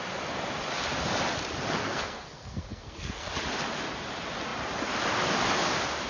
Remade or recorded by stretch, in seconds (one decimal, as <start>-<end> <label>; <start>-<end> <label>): 0.0-1.8 recorded; 1.8-3.3 remade; 3.3-6.1 recorded